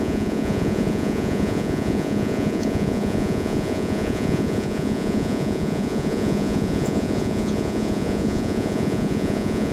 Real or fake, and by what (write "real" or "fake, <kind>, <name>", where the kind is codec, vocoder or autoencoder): fake, vocoder, Vocos